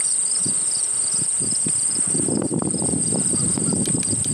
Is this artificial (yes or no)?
no